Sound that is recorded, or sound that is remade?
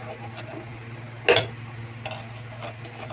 recorded